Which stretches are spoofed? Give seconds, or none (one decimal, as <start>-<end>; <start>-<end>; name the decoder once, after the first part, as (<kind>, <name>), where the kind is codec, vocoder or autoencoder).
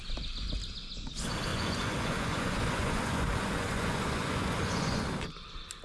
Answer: 1.5-5.0 (vocoder, Vocos)